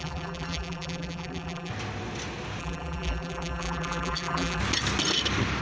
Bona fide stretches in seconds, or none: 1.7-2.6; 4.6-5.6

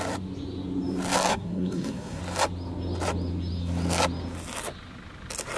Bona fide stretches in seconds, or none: 0.0-1.3; 2.2-5.6

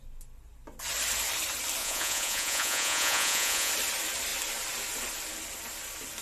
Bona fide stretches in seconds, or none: 0.0-1.8; 3.7-6.2

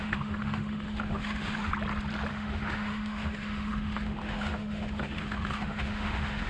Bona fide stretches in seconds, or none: 1.7-2.3

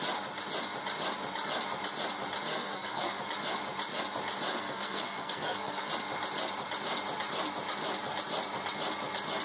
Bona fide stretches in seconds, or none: 0.0-2.5; 3.2-4.5; 5.9-9.4

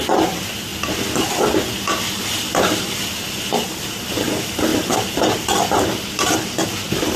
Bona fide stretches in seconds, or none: 0.0-7.2

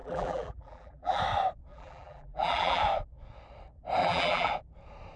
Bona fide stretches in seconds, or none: 1.2-1.7; 2.8-4.0; 4.5-5.2